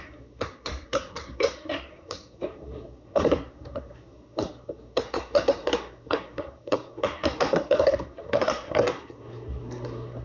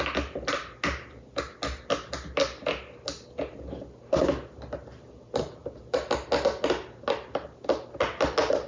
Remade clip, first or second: first